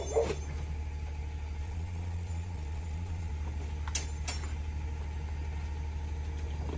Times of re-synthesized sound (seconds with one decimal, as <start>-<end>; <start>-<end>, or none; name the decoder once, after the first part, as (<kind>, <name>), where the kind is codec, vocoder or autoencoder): 1.6-3.3 (vocoder, Vocos)